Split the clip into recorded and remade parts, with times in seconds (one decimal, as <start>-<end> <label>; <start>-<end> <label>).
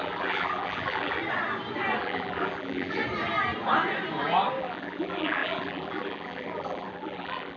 0.0-1.2 remade; 1.2-2.0 recorded; 2.0-3.0 remade; 3.0-4.6 recorded; 4.6-7.6 remade